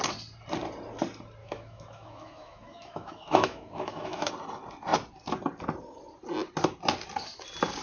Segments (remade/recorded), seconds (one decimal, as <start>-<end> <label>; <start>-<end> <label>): 0.0-1.4 recorded; 1.4-4.3 remade; 4.3-7.8 recorded